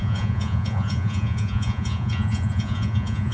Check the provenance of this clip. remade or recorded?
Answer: remade